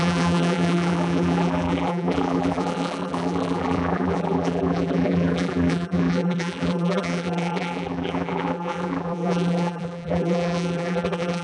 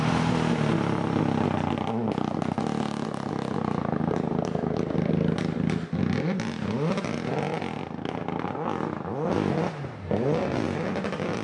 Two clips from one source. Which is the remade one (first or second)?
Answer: first